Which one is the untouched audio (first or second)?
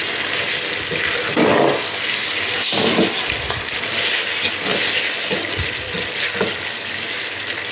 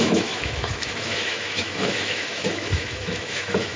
first